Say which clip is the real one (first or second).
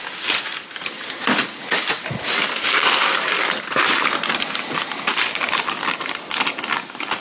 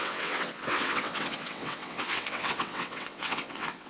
first